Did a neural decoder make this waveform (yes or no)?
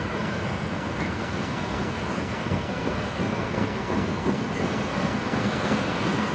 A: yes